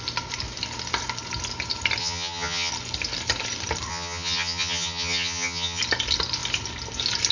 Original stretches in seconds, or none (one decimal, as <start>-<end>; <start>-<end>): 0.0-2.0; 2.7-3.9; 5.8-7.3